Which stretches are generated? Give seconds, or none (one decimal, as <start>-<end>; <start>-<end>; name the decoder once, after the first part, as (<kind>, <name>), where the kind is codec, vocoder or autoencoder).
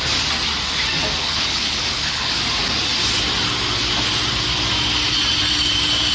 1.2-2.4 (codec, HILCodec)